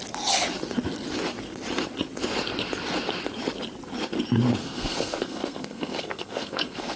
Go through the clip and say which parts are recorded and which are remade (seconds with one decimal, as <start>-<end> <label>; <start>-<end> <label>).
0.0-4.6 recorded; 4.6-7.0 remade